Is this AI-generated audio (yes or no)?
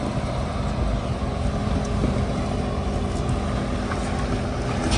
no